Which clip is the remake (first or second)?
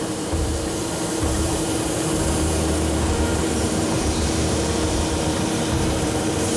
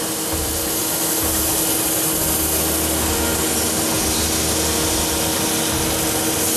first